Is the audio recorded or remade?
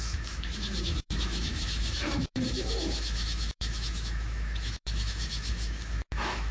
remade